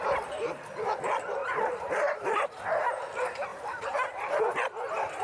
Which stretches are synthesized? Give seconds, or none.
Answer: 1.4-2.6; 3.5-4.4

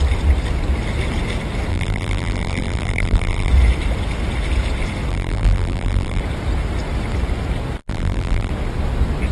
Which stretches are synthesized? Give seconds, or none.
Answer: 1.7-3.5; 5.1-6.2; 7.8-8.5

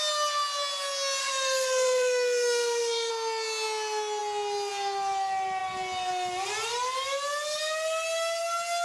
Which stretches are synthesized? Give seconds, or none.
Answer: 1.2-3.1

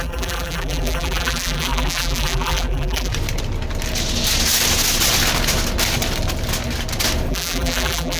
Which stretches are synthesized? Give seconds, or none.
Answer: 0.0-3.1; 7.3-8.2

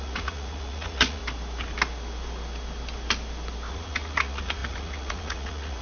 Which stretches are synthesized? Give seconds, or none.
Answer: 0.0-1.2; 3.7-5.8